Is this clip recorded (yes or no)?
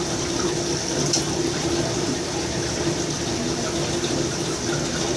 yes